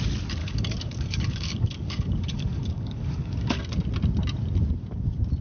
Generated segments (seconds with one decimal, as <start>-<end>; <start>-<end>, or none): 0.4-3.6